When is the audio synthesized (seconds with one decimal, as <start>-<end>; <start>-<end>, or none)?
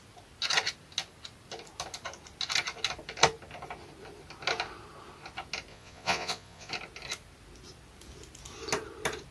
5.7-6.7